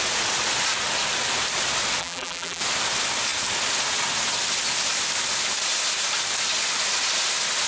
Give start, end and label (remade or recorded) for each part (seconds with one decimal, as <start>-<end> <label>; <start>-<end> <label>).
0.0-2.0 recorded; 2.0-2.6 remade; 2.6-7.7 recorded